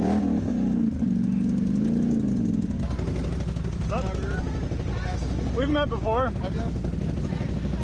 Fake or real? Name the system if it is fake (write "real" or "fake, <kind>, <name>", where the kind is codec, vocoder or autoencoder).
real